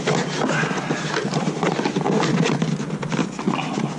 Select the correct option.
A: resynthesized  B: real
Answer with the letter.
B